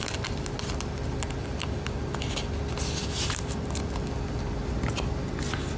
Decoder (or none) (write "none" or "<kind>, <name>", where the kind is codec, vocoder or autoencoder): none